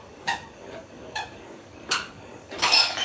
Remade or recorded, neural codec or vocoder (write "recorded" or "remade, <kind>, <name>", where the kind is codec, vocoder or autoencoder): remade, codec, DAC